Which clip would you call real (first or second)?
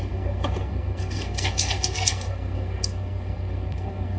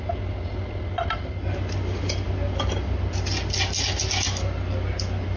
second